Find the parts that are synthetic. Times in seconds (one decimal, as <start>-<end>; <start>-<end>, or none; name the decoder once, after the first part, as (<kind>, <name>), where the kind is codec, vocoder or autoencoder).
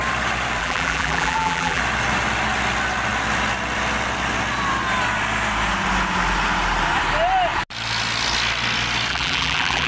0.6-1.8 (vocoder, BigVGAN v2); 9.1-9.9